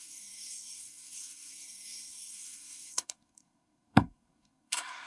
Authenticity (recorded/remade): remade